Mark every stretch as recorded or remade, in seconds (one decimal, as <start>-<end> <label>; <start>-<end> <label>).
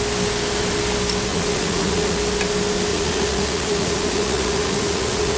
0.0-1.3 recorded; 1.3-2.2 remade; 2.2-2.9 recorded; 2.9-5.4 remade